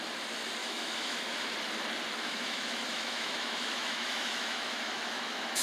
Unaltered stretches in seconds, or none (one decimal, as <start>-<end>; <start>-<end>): 0.0-0.6; 1.4-2.1